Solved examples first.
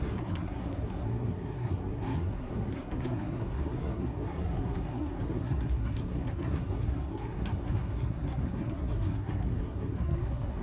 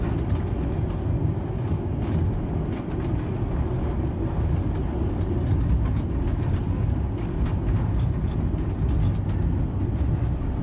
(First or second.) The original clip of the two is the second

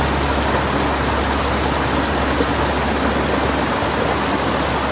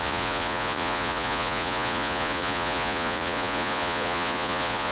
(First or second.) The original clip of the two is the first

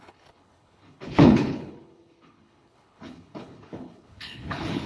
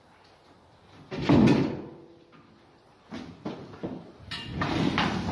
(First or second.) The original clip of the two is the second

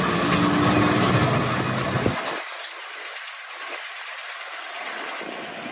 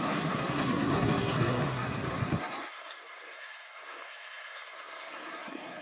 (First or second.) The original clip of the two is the first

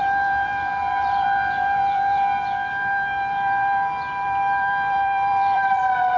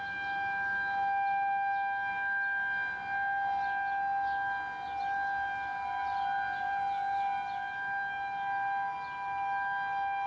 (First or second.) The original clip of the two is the second